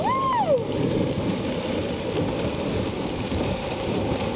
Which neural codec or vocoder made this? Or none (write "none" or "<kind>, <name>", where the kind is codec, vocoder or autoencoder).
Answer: none